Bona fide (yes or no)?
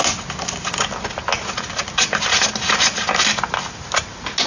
yes